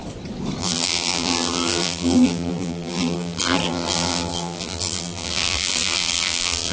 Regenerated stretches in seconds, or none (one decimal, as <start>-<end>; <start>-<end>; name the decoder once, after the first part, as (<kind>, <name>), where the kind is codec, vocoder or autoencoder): 0.6-6.7 (vocoder, BigVGAN v2)